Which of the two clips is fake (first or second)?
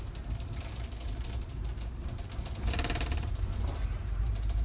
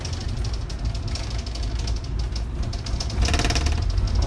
first